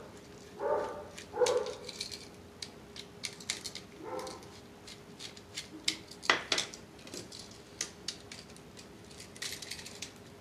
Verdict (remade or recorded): recorded